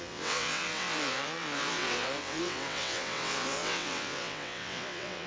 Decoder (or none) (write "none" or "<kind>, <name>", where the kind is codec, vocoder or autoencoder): vocoder, WaveNeXt